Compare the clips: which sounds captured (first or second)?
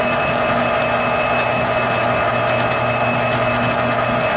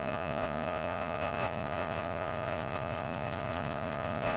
first